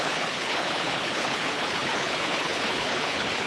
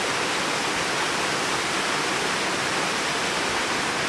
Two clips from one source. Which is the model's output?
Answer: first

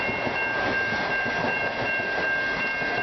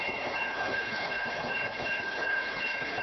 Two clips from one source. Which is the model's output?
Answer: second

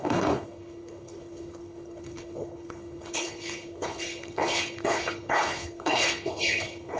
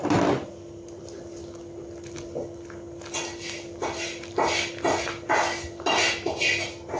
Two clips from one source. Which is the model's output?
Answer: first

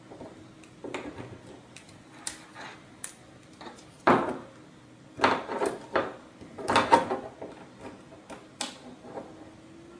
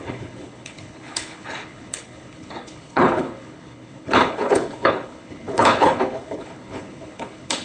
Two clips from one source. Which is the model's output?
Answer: second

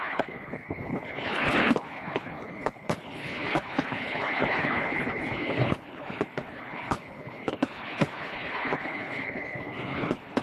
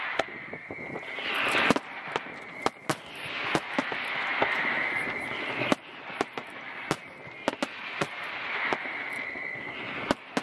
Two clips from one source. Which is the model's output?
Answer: first